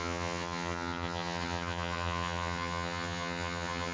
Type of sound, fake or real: fake